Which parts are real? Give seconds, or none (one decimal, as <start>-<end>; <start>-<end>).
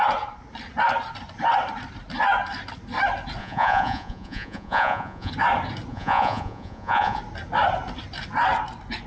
0.0-3.4; 5.3-5.9; 7.2-9.1